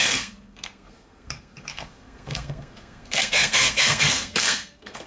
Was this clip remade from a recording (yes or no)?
yes